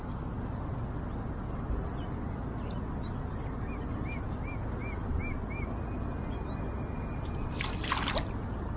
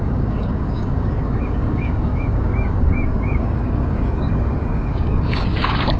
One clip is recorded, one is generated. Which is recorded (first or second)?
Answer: first